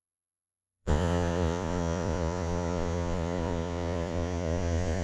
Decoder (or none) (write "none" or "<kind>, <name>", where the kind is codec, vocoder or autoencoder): vocoder, Vocos